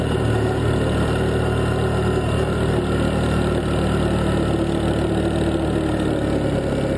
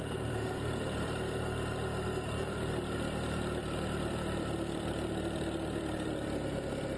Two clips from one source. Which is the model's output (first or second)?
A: second